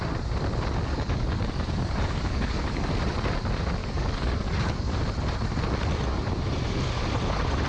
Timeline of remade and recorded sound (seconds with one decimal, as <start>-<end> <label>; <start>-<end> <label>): 0.0-0.9 recorded; 0.9-2.9 remade; 2.9-3.8 recorded; 3.8-5.0 remade; 5.0-7.7 recorded